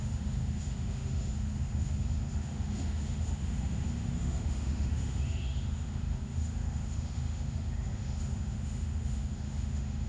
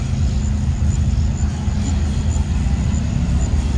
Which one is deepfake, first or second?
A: first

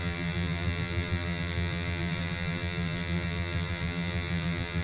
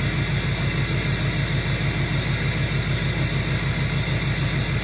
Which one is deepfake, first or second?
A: first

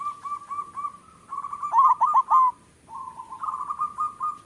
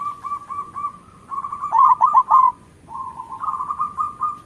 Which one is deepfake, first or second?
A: second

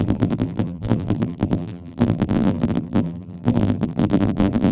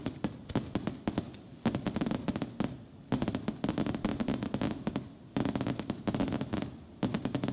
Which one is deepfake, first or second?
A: first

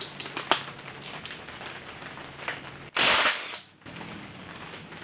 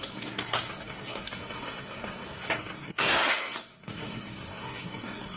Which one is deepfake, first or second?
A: second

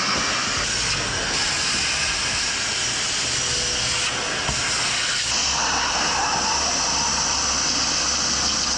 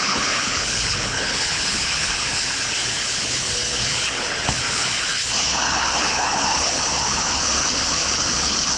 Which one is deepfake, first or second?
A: second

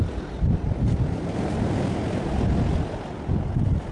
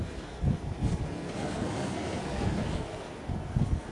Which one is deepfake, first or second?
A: second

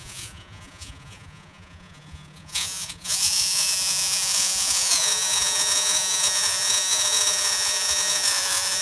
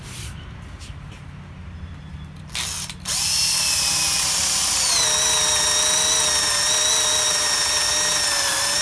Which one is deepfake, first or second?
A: first